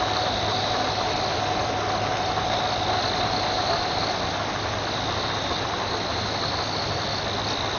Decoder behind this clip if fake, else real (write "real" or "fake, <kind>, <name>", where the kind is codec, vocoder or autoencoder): real